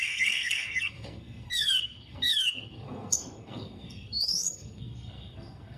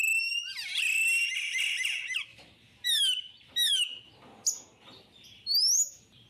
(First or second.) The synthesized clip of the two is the first